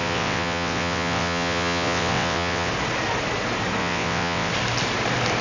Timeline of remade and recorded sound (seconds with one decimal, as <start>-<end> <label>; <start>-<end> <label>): 0.0-2.7 remade; 2.7-3.8 recorded; 3.8-4.5 remade; 4.5-5.4 recorded